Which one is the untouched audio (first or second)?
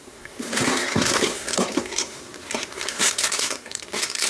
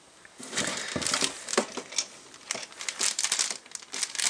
second